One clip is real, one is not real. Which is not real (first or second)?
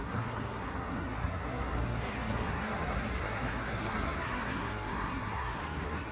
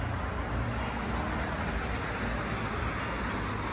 first